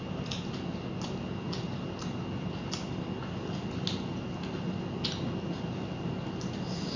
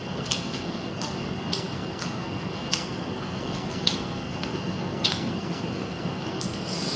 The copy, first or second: second